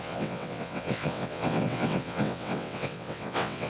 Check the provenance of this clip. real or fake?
fake